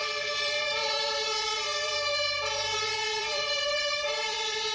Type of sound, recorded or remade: remade